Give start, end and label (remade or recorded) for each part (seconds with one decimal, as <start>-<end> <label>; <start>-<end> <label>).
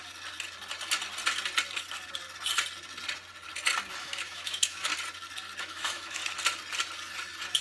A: 0.0-4.0 recorded; 4.0-4.9 remade; 4.9-5.6 recorded; 5.6-6.2 remade; 6.2-7.6 recorded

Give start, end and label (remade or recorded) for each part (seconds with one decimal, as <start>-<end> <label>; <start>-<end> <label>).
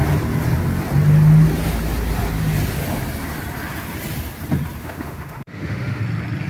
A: 0.0-4.8 recorded; 4.8-6.0 remade; 6.0-6.5 recorded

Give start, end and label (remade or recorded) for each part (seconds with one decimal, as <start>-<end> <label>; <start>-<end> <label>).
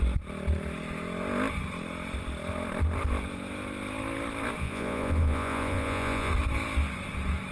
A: 0.0-4.6 recorded; 4.6-6.3 remade; 6.3-7.5 recorded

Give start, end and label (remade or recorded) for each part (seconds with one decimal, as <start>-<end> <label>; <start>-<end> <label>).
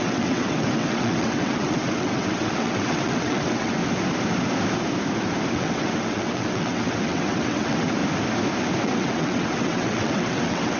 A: 0.0-3.8 remade; 3.8-5.5 recorded; 5.5-8.0 remade; 8.0-8.8 recorded; 8.8-10.8 remade